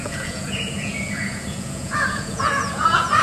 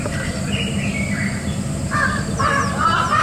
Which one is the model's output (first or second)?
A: first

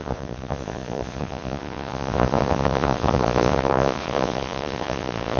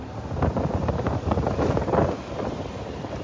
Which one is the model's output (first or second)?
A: first